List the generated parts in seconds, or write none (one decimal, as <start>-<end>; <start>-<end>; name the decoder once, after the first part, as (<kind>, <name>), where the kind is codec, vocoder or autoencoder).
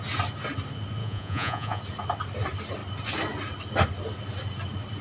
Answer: 1.0-1.8 (vocoder, Vocos)